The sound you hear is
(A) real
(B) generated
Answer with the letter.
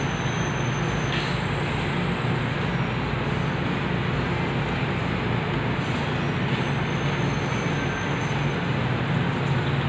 A